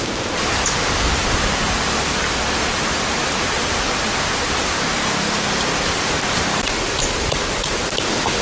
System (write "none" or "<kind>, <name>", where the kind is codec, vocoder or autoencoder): none